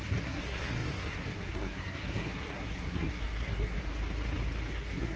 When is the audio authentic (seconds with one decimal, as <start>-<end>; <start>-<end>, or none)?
3.8-4.7